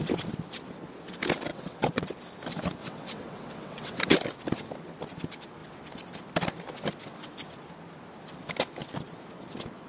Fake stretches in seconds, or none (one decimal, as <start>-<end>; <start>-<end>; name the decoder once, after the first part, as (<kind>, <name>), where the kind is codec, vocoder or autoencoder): 1.5-2.1 (vocoder, WaveNeXt); 2.8-4.1